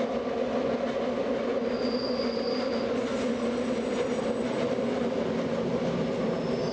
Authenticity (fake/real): real